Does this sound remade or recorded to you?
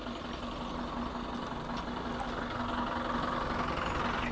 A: recorded